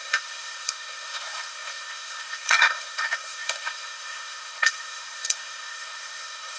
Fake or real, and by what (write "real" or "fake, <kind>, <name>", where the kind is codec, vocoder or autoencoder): fake, codec, SNAC